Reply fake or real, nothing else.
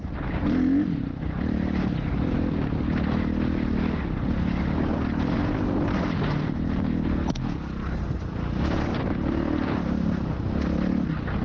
real